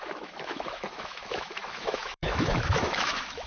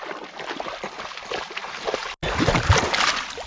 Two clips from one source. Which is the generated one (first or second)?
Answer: first